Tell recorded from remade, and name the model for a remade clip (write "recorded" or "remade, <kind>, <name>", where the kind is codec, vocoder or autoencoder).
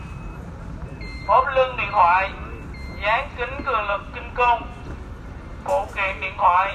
recorded